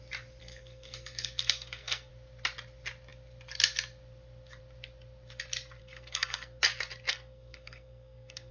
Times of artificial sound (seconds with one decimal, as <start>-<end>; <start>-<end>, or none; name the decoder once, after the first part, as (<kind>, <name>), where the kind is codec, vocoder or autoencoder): 0.4-2.1 (codec, SNAC); 5.8-6.6; 7.1-8.5